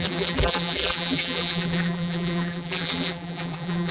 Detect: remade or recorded remade